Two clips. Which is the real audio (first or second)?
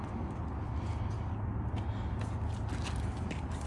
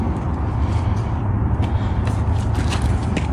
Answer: first